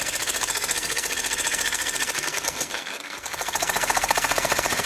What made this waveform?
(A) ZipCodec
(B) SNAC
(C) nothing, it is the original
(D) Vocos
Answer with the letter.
B